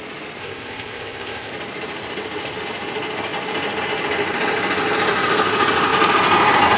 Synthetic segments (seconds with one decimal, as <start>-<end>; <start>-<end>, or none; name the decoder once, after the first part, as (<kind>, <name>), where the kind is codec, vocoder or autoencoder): 0.4-1.5 (codec, ZipCodec)